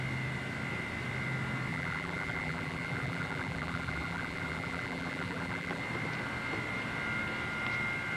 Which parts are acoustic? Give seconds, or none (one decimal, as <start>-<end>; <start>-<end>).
0.0-1.7; 5.8-8.2